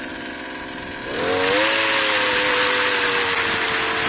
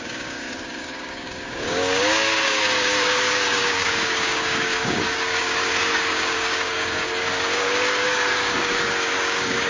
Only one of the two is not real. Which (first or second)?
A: second